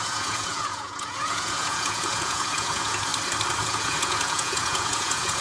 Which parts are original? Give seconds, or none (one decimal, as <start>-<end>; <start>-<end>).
3.1-3.6